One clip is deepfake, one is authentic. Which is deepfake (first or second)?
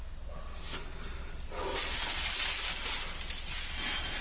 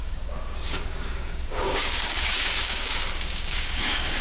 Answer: second